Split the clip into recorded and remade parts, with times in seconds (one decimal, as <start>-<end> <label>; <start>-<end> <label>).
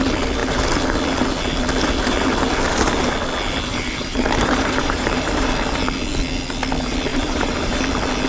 0.0-3.7 recorded; 3.7-5.5 remade; 5.5-7.1 recorded; 7.1-7.8 remade; 7.8-8.3 recorded